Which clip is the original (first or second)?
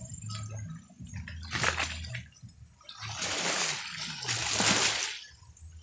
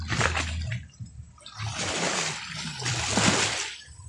first